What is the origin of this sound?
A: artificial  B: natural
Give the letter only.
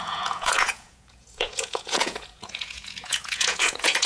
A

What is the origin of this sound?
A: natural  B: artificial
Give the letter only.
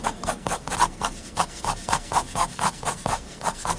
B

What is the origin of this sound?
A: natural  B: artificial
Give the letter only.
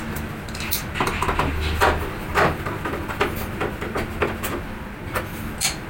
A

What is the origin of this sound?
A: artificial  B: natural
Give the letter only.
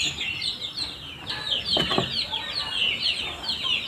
B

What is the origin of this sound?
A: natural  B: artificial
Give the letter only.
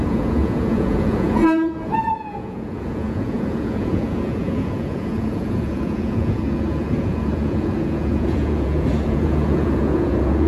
B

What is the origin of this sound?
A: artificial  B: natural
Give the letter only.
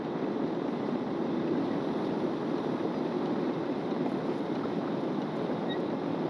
A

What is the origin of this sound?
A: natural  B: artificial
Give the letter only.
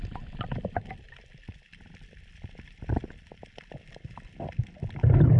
A